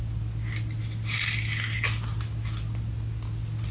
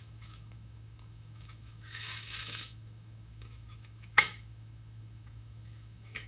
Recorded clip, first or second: first